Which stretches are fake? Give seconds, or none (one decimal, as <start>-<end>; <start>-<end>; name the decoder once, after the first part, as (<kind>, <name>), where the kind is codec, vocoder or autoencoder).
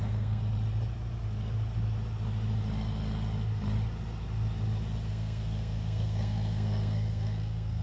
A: 0.0-0.4 (codec, SNAC); 5.1-7.8